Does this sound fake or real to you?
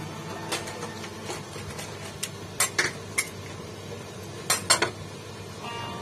real